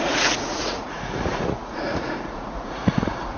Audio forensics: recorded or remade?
remade